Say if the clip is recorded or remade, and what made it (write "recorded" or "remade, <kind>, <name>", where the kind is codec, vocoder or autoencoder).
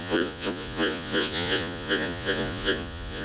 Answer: remade, vocoder, Vocos